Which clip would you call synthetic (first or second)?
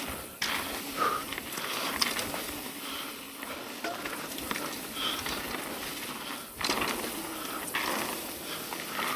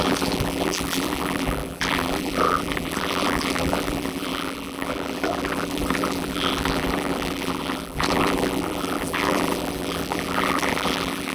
second